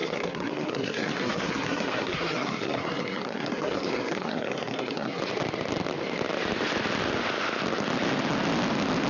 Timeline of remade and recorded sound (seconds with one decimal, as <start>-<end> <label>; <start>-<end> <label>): 0.0-5.2 remade; 5.2-9.1 recorded